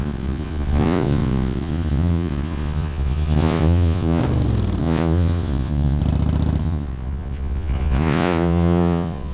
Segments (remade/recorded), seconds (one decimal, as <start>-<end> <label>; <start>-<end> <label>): 0.0-4.2 remade; 4.2-4.8 recorded; 4.8-6.0 remade; 6.0-6.6 recorded; 6.6-9.3 remade